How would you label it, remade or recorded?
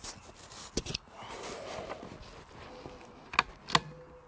recorded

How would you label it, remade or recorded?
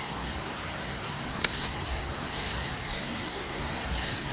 remade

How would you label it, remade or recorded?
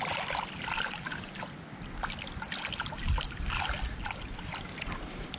recorded